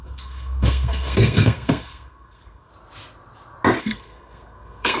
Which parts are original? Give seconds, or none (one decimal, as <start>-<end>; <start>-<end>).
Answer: 2.7-3.8